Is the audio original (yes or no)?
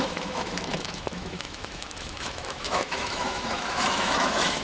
no